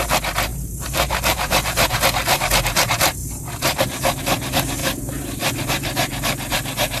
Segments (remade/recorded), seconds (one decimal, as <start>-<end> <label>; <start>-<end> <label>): 0.0-0.5 recorded; 0.5-2.0 remade; 2.0-7.0 recorded